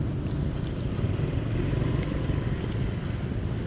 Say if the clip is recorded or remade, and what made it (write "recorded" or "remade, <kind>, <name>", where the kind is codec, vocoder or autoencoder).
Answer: recorded